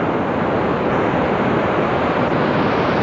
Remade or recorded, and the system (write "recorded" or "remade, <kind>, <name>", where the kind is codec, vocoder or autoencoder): recorded